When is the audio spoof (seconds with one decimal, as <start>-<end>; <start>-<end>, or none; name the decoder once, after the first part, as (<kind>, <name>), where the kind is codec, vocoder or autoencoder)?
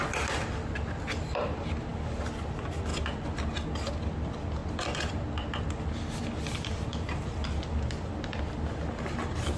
none